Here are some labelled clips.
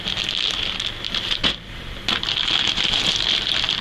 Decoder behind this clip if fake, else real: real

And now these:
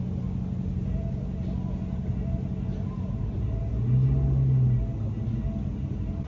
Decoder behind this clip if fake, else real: real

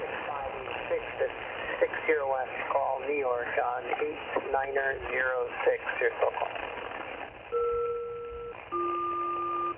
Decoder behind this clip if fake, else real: real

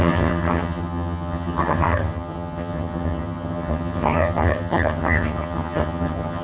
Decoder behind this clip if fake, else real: fake, vocoder, HiFi-GAN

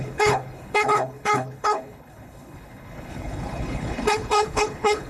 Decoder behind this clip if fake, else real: fake, codec, HILCodec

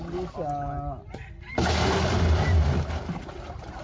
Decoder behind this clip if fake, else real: real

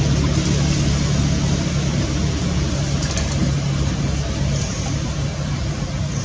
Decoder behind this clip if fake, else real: real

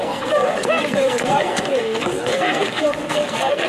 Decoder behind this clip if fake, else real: fake, codec, SNAC